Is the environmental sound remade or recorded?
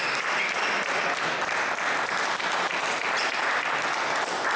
recorded